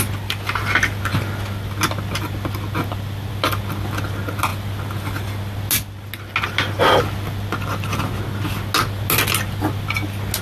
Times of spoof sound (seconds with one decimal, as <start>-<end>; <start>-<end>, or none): none